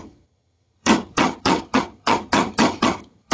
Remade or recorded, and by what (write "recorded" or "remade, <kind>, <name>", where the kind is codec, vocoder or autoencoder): remade, vocoder, HiFi-GAN